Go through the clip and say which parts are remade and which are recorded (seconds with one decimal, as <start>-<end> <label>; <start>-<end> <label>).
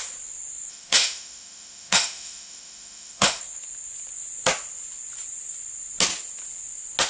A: 0.0-0.7 recorded; 0.7-3.4 remade; 3.4-7.1 recorded